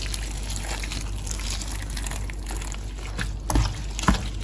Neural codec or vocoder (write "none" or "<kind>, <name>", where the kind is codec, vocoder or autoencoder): none